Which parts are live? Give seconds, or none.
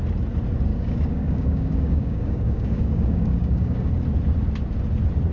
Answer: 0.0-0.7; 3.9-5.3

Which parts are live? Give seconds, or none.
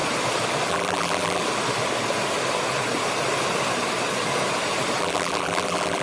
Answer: 0.0-0.7; 1.4-5.0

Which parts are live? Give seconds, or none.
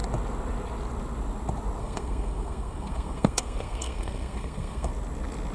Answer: 0.0-1.8; 4.9-5.5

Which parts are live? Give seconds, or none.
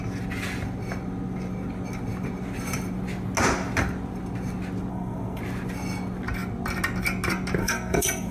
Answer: 0.0-4.9; 5.4-7.6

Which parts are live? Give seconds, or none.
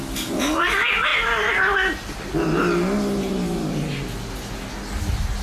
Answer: 0.0-5.4